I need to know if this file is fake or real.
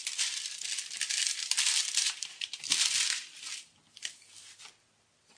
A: real